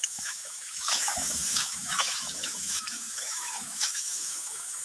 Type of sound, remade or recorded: remade